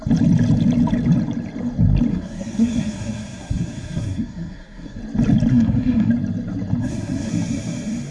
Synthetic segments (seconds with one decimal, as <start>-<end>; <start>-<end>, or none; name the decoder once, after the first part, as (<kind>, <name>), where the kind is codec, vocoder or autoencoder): 2.1-5.0 (codec, SNAC); 5.5-6.1; 6.8-7.3